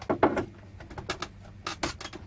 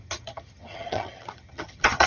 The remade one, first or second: second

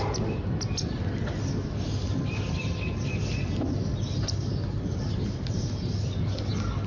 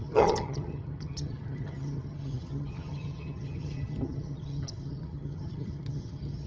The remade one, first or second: second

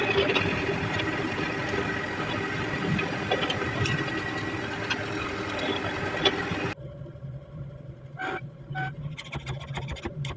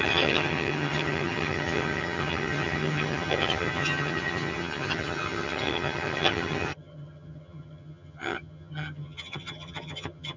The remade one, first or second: second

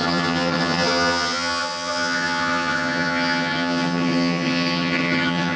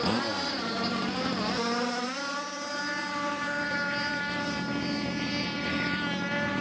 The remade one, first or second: first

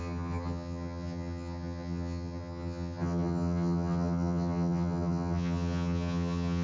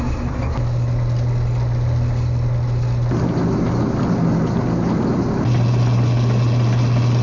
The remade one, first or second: first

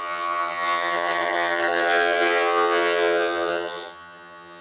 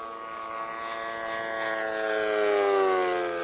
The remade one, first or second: first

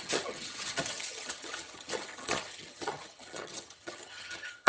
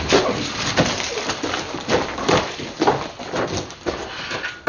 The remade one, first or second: first